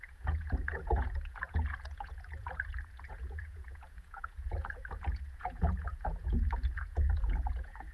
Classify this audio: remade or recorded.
remade